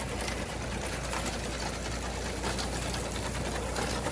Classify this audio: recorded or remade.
recorded